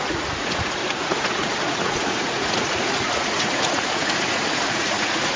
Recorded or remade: remade